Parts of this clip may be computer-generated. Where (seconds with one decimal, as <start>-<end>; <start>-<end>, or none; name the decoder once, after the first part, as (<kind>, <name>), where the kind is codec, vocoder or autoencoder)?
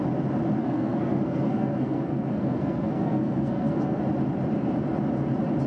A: 0.6-4.0 (codec, SNAC)